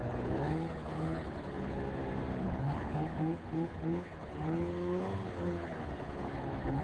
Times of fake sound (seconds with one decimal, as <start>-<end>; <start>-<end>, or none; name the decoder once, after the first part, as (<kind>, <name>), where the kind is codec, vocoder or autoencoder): 0.0-1.8 (codec, HILCodec); 2.4-6.8